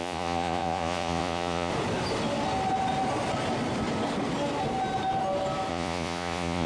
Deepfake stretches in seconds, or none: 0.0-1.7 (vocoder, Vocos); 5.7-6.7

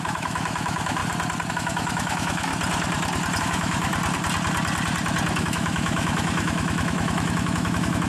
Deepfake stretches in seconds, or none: 0.0-1.0 (autoencoder, DAC-VAE); 1.5-2.5; 3.4-3.9; 5.4-8.1

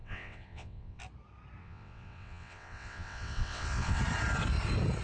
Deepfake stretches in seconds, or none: 0.0-1.0 (vocoder, WaveNeXt); 1.6-4.0

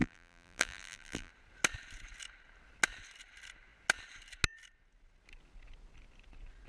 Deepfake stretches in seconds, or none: 0.0-1.3 (vocoder, BigVGAN v2)

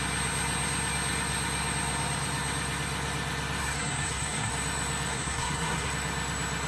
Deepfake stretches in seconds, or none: 3.6-4.5 (codec, SNAC); 5.1-5.9

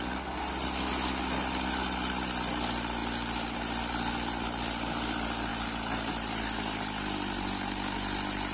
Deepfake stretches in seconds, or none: none

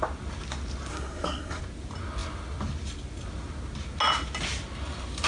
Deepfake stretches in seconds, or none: 0.9-1.6 (codec, SNAC)